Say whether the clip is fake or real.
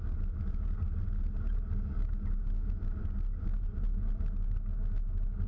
real